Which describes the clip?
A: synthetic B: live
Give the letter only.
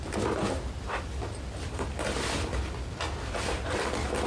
B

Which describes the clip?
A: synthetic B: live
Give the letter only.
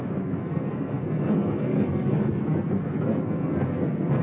A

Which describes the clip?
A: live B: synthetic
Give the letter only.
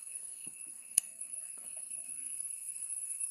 B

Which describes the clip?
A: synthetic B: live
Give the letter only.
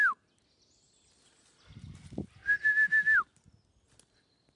B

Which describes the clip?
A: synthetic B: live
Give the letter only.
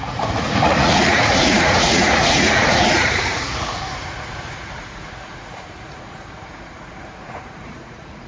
A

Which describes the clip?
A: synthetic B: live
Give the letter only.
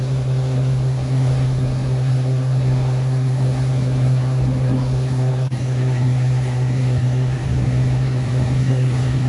A